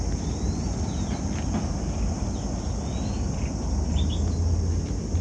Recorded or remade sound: recorded